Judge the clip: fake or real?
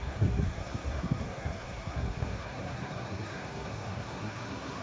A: fake